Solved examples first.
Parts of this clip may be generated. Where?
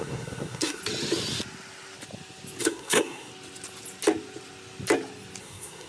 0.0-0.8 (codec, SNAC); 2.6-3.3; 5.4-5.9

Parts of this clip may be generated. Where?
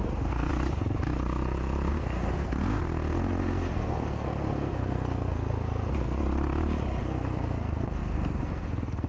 0.0-0.5 (codec, SNAC); 1.9-6.2; 7.0-9.1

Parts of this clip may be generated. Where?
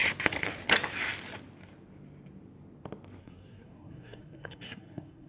3.2-5.3 (codec, SNAC)